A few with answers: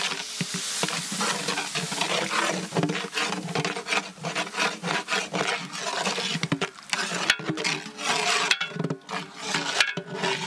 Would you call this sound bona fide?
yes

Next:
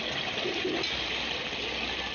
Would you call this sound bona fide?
yes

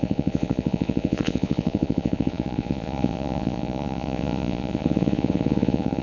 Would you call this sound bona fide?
no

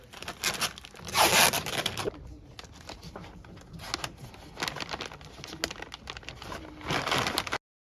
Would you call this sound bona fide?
yes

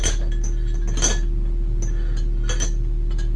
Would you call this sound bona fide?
yes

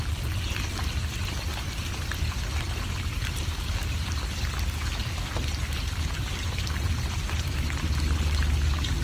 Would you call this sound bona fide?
yes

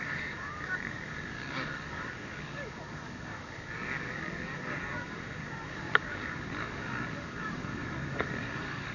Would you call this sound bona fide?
no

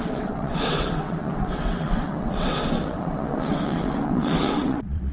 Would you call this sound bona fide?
no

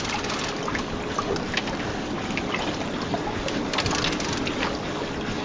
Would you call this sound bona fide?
yes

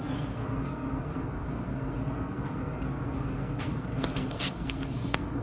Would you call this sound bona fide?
no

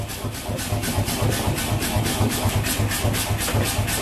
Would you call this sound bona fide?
yes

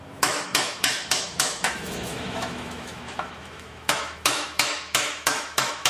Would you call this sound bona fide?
no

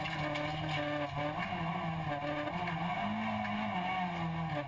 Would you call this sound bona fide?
yes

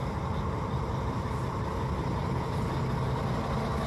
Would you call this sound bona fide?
yes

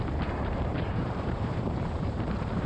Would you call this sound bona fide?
no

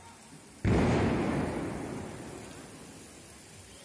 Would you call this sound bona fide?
yes